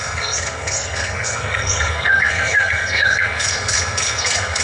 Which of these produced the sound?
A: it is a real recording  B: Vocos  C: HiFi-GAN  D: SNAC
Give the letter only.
D